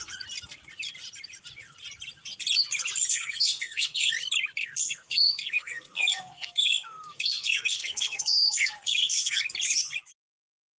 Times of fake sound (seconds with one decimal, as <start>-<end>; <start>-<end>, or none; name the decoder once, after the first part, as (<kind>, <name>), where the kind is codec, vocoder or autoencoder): 3.1-4.1 (codec, SNAC); 4.6-9.4

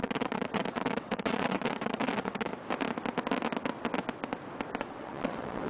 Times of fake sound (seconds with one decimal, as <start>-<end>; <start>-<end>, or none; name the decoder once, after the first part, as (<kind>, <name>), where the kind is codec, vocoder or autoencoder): 0.0-2.5 (vocoder, WaveNeXt); 4.9-5.7